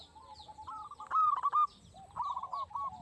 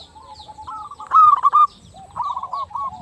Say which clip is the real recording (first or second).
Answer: first